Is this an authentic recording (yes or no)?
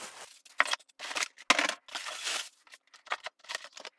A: yes